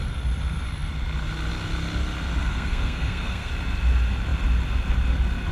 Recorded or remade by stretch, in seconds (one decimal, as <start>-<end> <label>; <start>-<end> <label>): 0.0-2.4 recorded; 2.4-3.5 remade; 3.5-5.5 recorded

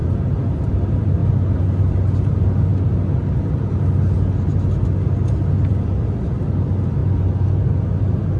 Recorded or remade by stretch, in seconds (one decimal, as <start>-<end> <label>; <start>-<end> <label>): 0.0-1.2 remade; 1.2-1.8 recorded; 1.8-2.7 remade; 2.7-5.3 recorded; 5.3-7.0 remade; 7.0-8.0 recorded; 8.0-8.4 remade

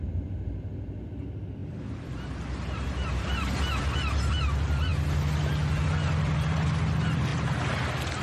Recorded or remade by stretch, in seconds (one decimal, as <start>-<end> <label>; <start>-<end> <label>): 0.0-8.2 recorded

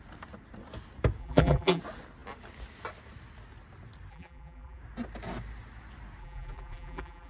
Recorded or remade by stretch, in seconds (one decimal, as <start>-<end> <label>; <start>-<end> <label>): 0.0-1.2 recorded; 1.2-1.8 remade; 1.8-4.1 recorded; 4.1-4.8 remade; 4.8-6.2 recorded; 6.2-7.3 remade

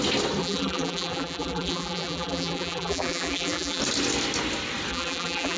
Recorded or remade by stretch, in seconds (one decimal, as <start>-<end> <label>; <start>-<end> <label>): 0.0-0.4 recorded; 0.4-3.8 remade; 3.8-4.9 recorded; 4.9-5.6 remade

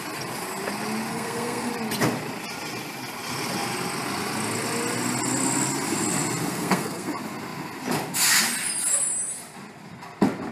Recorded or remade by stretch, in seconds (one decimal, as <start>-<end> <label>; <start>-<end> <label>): 0.0-1.1 recorded; 1.1-1.7 remade; 1.7-6.5 recorded; 6.5-7.1 remade; 7.1-10.5 recorded

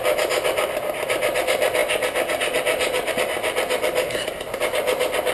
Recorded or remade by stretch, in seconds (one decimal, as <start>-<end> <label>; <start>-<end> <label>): 0.0-5.3 recorded

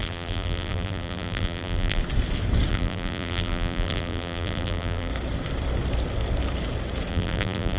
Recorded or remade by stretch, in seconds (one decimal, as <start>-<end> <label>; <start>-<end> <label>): 0.0-2.0 remade; 2.0-2.7 recorded; 2.7-5.1 remade; 5.1-7.1 recorded; 7.1-7.8 remade